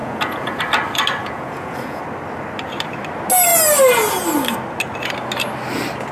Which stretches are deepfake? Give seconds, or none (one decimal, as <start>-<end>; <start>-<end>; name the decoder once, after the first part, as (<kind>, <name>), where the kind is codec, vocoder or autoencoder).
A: 0.0-0.6 (vocoder, Vocos); 1.2-2.0